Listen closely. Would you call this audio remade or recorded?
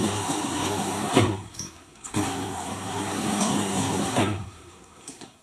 remade